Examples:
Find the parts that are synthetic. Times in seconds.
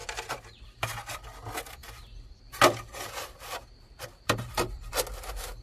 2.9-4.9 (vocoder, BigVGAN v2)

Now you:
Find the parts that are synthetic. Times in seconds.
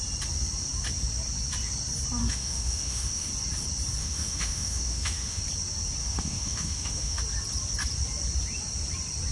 2.2-3.3 (autoencoder, DAC-VAE); 4.0-5.4; 6.0-7.2